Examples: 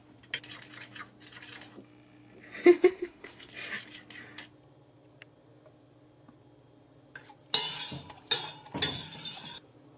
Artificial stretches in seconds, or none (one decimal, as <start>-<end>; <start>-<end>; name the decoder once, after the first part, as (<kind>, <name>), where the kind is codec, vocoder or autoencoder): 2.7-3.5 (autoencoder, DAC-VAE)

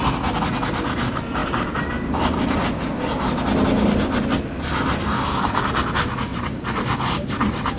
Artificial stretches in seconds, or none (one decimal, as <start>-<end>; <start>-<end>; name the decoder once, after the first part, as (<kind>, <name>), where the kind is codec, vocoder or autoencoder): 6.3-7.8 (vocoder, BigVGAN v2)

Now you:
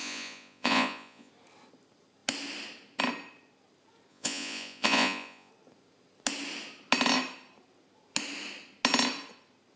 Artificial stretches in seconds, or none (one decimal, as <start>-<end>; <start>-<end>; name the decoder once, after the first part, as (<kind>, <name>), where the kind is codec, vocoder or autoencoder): 0.0-1.3 (vocoder, Vocos); 4.1-5.5